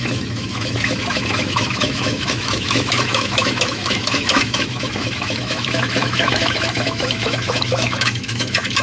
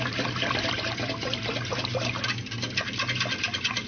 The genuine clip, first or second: second